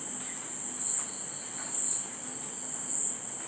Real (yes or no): yes